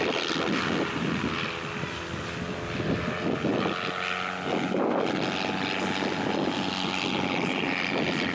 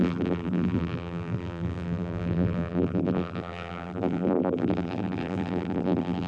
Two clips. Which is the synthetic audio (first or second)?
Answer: second